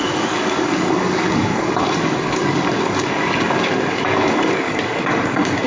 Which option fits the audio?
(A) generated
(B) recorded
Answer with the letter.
A